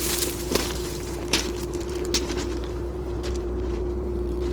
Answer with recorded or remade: remade